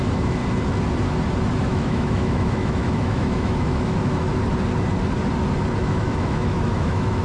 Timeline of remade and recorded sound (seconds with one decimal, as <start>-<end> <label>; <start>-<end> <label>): 0.0-0.4 remade; 0.4-1.5 recorded; 1.5-4.4 remade; 4.4-5.8 recorded; 5.8-7.2 remade